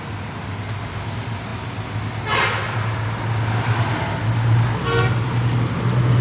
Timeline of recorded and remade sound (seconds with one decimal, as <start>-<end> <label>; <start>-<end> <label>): 0.0-6.2 recorded